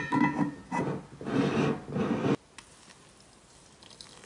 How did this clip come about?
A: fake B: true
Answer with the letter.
B